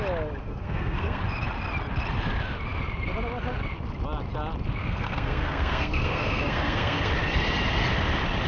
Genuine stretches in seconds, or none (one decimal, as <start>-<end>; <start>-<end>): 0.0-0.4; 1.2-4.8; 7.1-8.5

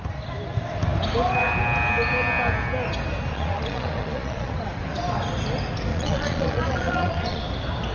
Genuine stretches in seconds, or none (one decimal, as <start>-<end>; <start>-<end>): 0.0-3.3; 4.5-5.9; 7.4-7.9

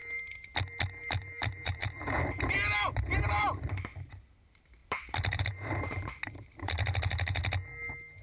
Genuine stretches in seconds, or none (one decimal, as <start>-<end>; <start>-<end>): 0.0-1.0; 7.4-8.2

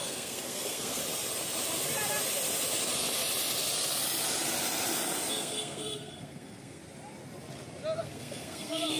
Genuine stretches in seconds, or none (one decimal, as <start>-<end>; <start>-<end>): 1.0-5.3; 6.8-8.0

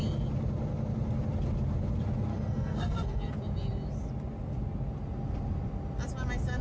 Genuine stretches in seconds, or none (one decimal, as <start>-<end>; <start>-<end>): 0.0-2.3; 3.3-6.6

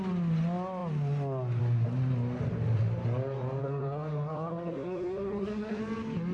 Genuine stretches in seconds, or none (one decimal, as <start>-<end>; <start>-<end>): 0.0-3.6; 5.8-6.3

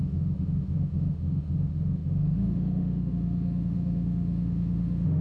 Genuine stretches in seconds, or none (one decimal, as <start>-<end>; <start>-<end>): none

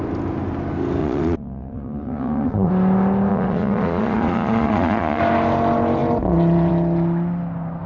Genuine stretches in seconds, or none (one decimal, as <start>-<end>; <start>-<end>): 0.0-1.0; 2.7-3.3; 5.2-7.9